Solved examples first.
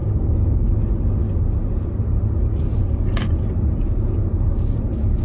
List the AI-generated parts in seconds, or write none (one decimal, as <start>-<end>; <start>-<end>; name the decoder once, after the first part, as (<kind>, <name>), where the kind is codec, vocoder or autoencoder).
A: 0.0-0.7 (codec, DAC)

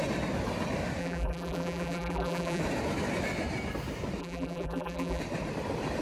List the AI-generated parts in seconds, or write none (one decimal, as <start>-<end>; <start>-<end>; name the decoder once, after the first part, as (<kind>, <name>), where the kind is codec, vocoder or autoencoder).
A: 1.0-2.6 (vocoder, BigVGAN v2); 4.2-5.2

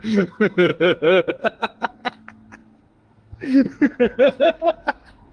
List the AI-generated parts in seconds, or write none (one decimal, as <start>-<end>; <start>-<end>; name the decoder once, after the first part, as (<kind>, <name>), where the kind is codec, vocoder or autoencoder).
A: 0.0-5.3 (codec, SNAC)